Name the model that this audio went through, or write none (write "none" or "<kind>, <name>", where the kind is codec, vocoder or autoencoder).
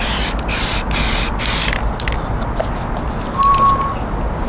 none